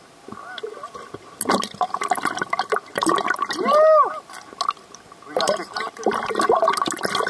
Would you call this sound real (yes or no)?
yes